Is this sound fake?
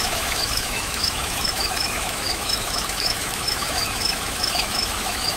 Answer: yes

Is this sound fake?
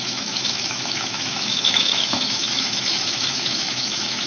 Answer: yes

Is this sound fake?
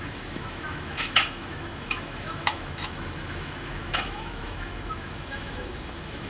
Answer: yes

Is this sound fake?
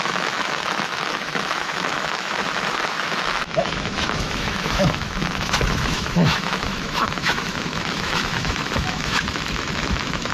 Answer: yes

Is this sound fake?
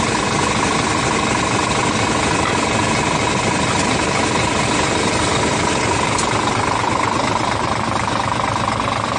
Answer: no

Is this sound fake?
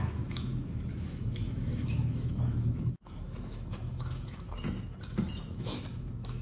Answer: yes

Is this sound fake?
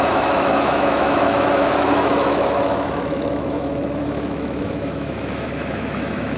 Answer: yes